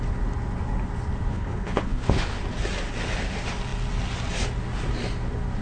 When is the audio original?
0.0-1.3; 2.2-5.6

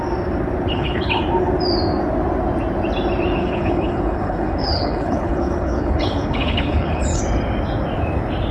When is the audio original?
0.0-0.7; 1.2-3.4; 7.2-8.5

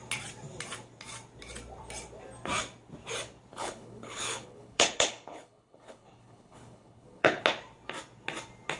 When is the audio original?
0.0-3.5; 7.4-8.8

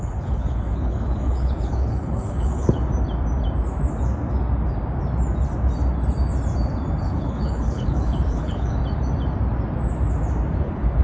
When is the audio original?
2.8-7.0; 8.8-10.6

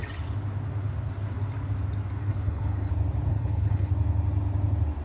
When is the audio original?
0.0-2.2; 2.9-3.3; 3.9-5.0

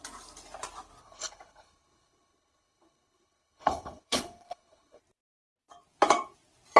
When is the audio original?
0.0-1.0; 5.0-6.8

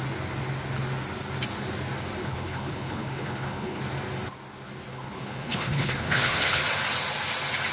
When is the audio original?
0.0-2.2; 3.8-4.9; 6.6-7.7